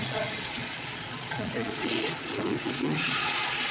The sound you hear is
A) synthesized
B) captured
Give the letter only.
A